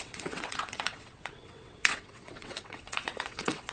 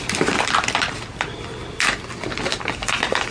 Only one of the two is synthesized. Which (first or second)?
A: first